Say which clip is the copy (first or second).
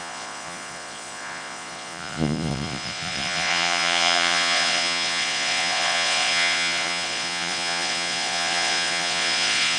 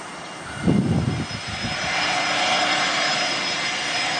first